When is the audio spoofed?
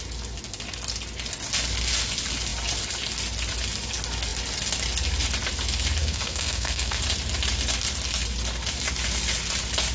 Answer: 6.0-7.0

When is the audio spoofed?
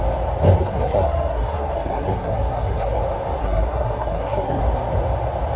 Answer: 0.6-3.0; 3.4-4.6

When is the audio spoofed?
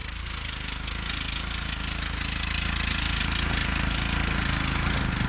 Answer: none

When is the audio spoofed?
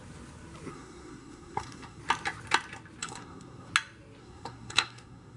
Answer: 0.7-2.0; 3.0-3.7; 4.2-5.4